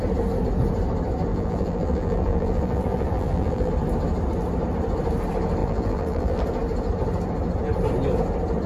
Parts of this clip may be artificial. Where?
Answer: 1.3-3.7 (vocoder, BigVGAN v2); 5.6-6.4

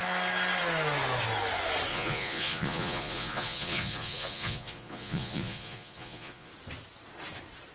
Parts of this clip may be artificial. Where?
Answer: 1.9-6.5 (vocoder, Vocos)